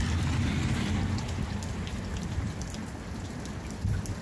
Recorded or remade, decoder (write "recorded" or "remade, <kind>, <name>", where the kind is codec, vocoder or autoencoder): recorded